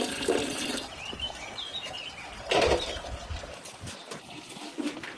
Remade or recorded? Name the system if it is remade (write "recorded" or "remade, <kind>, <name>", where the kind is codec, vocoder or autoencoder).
remade, vocoder, BigVGAN v2